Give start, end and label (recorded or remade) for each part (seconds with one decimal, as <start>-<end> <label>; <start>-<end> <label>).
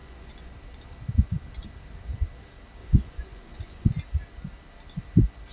0.0-0.5 remade; 0.5-2.8 recorded; 2.8-3.9 remade; 3.9-5.5 recorded